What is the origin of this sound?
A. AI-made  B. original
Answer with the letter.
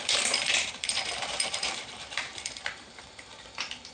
A